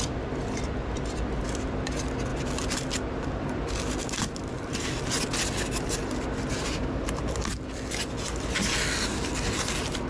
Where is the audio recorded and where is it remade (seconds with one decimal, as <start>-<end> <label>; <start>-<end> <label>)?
0.0-10.1 recorded